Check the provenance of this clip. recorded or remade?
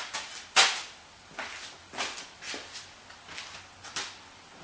recorded